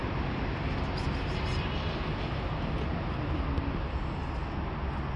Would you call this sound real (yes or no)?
yes